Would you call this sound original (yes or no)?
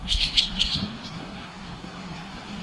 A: no